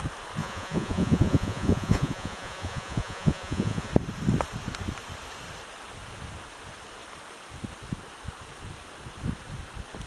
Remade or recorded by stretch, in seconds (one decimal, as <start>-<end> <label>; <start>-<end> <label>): 0.0-0.4 recorded; 0.4-3.9 remade; 3.9-10.1 recorded